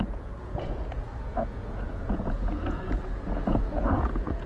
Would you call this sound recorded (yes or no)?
no